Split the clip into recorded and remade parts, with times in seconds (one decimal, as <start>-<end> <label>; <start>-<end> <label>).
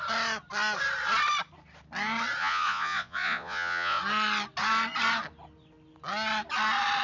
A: 0.0-2.4 recorded; 2.4-4.0 remade; 4.0-7.0 recorded